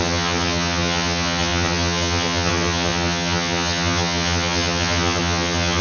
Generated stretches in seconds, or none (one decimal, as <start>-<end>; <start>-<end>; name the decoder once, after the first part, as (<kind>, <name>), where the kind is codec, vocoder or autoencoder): 0.0-5.8 (vocoder, HiFi-GAN)